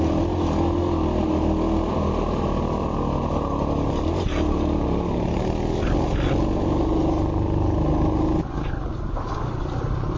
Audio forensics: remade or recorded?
recorded